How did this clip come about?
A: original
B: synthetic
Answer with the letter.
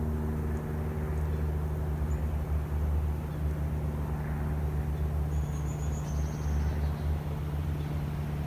A